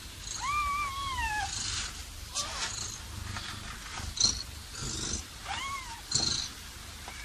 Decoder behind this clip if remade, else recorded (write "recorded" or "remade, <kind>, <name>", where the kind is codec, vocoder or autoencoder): recorded